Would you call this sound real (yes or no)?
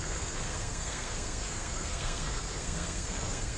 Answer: no